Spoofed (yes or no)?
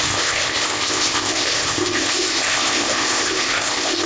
yes